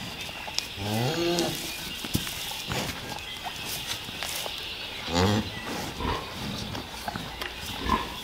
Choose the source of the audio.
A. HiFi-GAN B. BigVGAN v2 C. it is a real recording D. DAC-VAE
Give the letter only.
C